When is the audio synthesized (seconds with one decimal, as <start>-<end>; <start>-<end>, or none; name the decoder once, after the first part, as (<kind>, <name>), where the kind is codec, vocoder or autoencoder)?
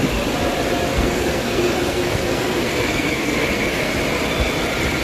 0.9-3.9 (codec, SNAC)